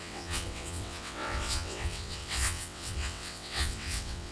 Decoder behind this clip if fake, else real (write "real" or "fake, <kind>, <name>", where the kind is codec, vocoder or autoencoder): fake, vocoder, WaveNeXt